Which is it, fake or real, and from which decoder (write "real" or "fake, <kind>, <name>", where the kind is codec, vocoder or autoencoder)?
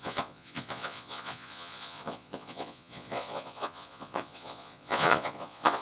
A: fake, vocoder, Vocos